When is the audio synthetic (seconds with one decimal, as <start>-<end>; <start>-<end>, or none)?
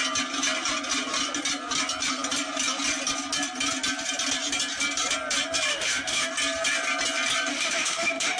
5.7-6.3; 7.5-8.4